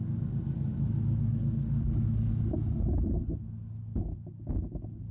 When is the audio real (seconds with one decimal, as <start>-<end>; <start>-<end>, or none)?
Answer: 0.0-5.1